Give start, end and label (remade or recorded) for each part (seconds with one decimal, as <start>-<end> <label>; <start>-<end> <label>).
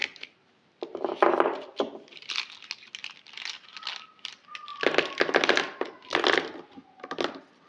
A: 0.0-7.7 recorded